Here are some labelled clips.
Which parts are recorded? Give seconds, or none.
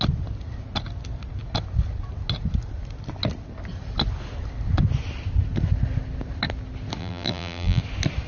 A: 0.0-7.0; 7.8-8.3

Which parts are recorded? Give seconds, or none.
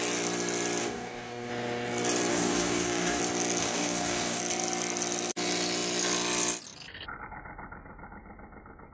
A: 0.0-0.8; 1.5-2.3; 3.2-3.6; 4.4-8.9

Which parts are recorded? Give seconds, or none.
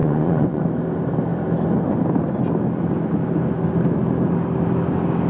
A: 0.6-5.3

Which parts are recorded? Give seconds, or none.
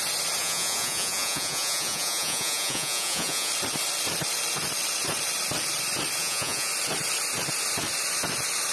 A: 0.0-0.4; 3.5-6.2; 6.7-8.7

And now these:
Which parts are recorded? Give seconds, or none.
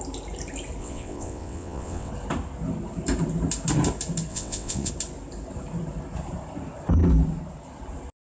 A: 0.0-0.8; 2.1-4.3; 4.9-8.2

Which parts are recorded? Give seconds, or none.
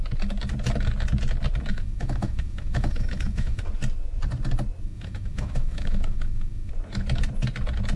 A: 0.0-1.7; 3.6-4.8; 6.7-8.0